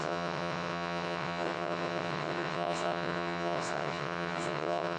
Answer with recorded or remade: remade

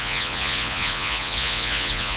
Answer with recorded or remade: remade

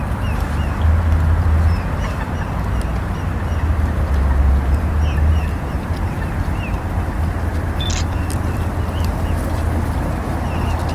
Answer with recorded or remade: recorded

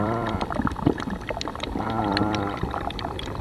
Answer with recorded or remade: remade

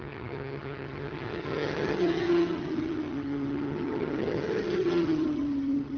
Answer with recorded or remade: remade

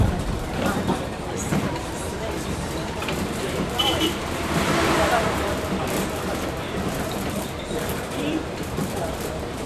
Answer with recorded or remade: remade